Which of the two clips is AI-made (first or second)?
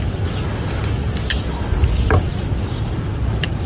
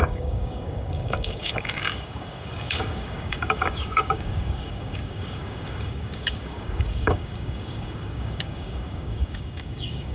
second